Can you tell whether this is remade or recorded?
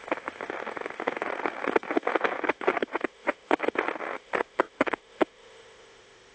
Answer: remade